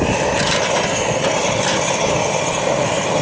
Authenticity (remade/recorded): recorded